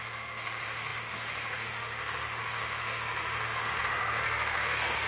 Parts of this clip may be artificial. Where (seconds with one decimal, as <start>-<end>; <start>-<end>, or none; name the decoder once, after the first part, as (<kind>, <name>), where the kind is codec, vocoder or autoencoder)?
0.0-5.1 (autoencoder, DAC-VAE)